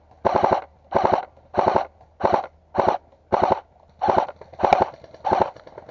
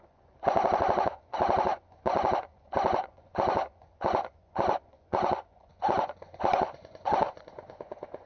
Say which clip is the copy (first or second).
second